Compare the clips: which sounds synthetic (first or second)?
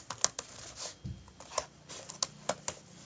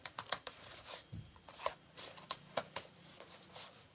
second